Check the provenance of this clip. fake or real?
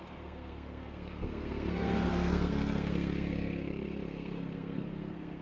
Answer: fake